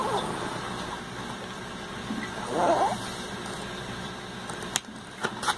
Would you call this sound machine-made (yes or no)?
no